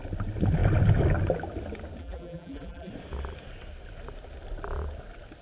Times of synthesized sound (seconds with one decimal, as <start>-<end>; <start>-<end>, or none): 2.0-2.9